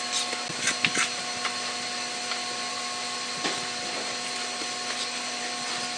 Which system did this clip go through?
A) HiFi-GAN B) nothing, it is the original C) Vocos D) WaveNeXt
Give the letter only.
B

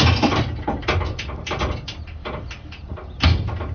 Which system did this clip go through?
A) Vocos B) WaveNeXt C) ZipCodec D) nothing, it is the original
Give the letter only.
D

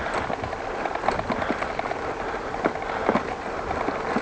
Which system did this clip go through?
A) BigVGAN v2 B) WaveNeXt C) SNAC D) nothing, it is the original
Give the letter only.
D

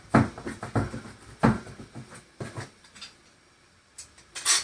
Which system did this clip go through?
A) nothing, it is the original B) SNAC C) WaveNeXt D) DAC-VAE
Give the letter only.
A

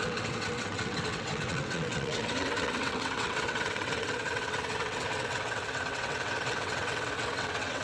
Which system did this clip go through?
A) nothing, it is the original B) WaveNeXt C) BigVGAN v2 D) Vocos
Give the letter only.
B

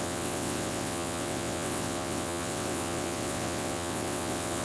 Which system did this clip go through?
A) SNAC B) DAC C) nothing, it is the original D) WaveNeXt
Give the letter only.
D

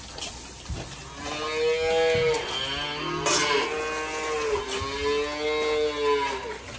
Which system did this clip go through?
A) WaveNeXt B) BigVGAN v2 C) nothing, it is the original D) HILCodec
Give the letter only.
C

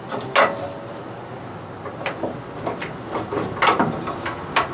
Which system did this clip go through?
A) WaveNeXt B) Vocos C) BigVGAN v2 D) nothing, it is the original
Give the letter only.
D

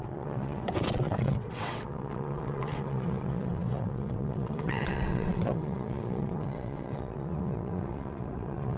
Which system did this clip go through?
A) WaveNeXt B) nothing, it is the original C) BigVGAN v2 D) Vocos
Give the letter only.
A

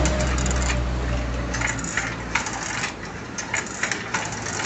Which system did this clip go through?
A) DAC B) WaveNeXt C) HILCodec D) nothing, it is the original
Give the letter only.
D